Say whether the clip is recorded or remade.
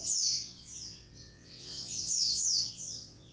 remade